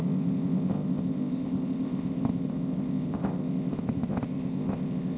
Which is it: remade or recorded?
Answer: remade